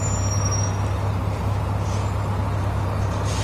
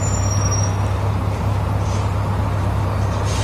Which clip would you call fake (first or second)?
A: second